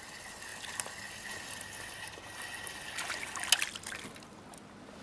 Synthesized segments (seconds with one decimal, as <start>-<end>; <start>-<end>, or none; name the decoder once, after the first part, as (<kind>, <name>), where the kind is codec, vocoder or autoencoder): none